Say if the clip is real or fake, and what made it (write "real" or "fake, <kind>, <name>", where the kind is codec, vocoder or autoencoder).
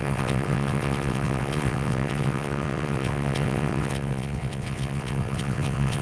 fake, vocoder, WaveNeXt